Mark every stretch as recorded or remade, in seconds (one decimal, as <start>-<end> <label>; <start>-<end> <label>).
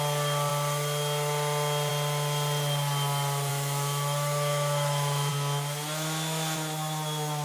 0.0-3.5 recorded; 3.5-5.3 remade; 5.3-7.4 recorded